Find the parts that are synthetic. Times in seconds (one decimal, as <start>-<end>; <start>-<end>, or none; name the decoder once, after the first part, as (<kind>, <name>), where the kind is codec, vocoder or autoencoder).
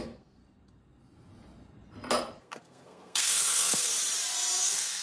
0.0-0.4 (codec, SNAC); 2.4-3.9; 4.6-5.0